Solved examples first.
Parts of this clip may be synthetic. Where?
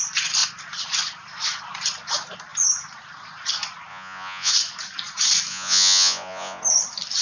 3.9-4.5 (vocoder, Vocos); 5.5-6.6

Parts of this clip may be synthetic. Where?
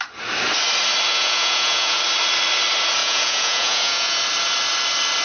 1.1-2.0 (vocoder, Vocos); 3.0-4.2